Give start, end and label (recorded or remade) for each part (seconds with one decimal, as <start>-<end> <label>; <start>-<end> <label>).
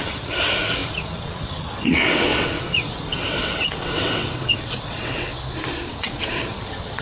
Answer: 0.0-5.3 remade; 5.3-5.9 recorded; 5.9-7.0 remade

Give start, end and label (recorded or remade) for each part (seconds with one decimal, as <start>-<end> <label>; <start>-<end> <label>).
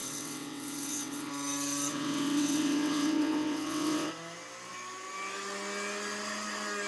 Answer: 0.0-1.3 remade; 1.3-1.9 recorded; 1.9-4.1 remade; 4.1-6.9 recorded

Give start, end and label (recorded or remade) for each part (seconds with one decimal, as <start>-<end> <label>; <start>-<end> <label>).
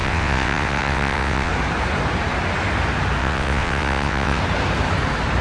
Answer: 0.0-1.5 remade; 1.5-3.2 recorded; 3.2-4.4 remade; 4.4-5.4 recorded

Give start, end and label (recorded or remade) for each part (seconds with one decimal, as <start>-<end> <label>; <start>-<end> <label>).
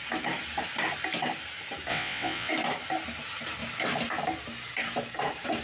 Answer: 0.0-1.9 recorded; 1.9-2.5 remade; 2.5-5.6 recorded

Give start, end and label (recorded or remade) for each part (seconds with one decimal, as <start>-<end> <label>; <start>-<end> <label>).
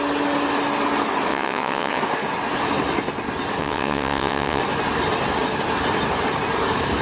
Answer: 0.0-1.3 recorded; 1.3-2.0 remade; 2.0-3.6 recorded; 3.6-4.6 remade; 4.6-7.0 recorded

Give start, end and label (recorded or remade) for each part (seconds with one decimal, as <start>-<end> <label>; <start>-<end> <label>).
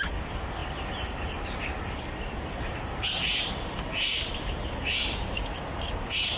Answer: 0.0-6.4 recorded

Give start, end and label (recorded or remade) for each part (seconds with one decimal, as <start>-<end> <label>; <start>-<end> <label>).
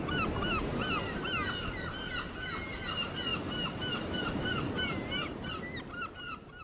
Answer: 0.0-6.6 recorded